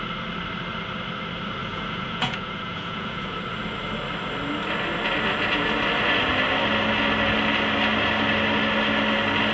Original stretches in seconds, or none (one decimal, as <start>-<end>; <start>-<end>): 0.0-1.6; 3.4-9.5